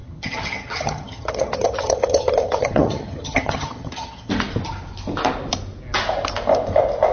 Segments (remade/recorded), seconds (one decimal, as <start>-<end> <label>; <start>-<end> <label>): 0.0-4.3 remade; 4.3-7.1 recorded